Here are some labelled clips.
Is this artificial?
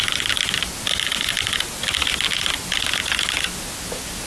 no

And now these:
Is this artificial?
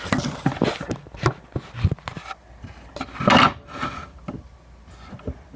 no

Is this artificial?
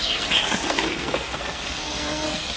yes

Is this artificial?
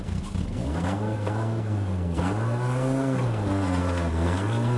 yes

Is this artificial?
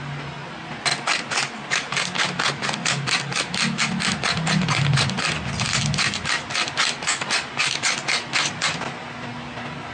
no